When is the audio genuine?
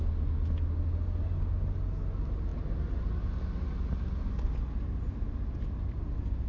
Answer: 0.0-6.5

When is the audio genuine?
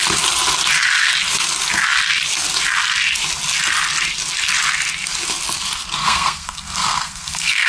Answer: 0.0-6.0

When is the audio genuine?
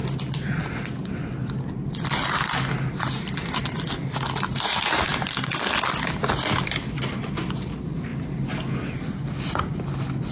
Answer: 0.0-5.3; 5.8-10.3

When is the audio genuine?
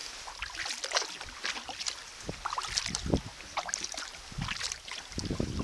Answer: 0.0-5.6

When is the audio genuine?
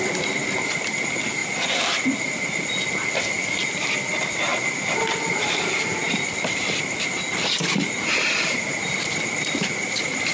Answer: 0.0-10.3